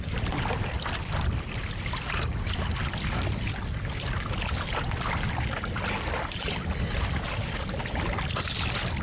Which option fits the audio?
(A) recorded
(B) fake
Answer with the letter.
A